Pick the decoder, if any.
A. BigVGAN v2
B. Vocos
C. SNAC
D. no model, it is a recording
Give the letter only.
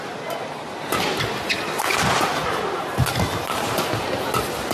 D